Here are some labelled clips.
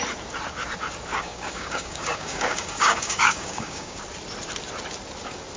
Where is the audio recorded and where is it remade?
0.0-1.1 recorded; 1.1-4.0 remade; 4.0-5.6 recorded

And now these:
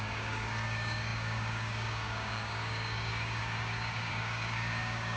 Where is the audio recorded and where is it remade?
0.0-5.2 remade

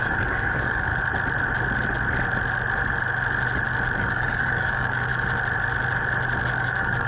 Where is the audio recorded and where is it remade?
0.0-0.9 remade; 0.9-4.0 recorded; 4.0-5.1 remade; 5.1-6.6 recorded; 6.6-7.1 remade